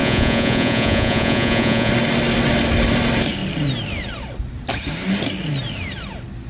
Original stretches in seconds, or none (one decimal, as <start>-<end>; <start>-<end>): 1.9-6.5